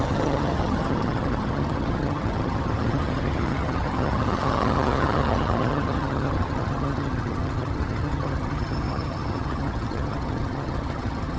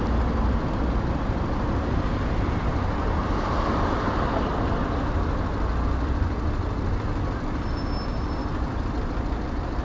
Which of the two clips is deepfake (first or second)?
first